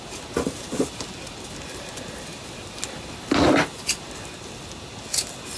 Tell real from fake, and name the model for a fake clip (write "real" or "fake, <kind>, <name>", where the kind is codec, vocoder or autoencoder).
real